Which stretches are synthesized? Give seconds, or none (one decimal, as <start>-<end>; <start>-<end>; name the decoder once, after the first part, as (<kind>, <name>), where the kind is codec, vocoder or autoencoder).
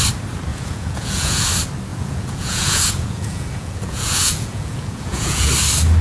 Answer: 0.5-1.5 (vocoder, Vocos); 1.9-5.5